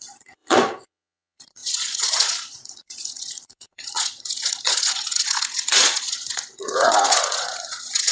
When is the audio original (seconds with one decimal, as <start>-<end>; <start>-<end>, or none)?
none